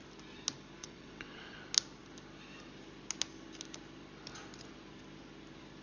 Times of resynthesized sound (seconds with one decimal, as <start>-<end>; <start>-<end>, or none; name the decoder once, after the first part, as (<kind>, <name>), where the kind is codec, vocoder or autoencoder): 0.8-1.6 (vocoder, WaveNeXt)